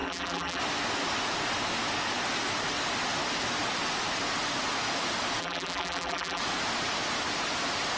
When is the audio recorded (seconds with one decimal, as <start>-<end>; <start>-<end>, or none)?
0.6-5.4; 6.4-8.0

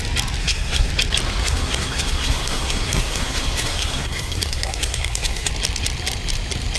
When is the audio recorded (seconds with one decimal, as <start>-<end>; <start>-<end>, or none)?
0.0-0.4; 0.9-1.4; 5.5-6.8

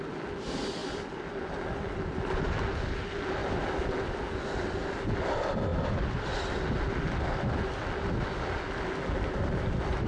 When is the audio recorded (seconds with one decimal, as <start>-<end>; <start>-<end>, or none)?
0.0-10.1

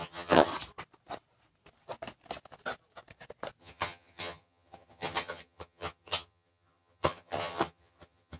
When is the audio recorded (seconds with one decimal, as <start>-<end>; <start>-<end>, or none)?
0.5-3.6

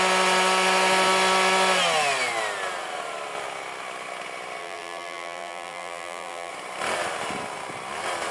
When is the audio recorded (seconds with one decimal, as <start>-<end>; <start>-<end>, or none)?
0.0-4.6; 6.5-8.3

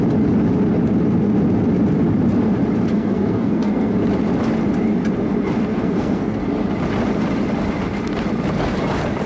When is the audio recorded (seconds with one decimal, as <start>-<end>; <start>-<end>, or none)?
0.0-2.9; 3.9-5.7; 6.4-9.3

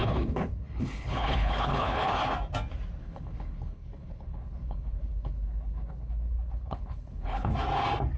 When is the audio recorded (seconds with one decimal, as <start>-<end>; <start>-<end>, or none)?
2.1-3.0; 7.5-8.2